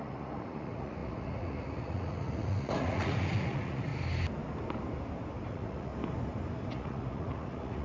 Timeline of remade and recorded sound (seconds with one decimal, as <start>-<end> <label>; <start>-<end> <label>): 0.0-3.9 remade; 3.9-5.5 recorded; 5.5-5.9 remade; 5.9-6.7 recorded; 6.7-7.8 remade